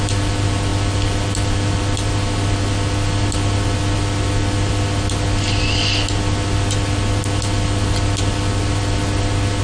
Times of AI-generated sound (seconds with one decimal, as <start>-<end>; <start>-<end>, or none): none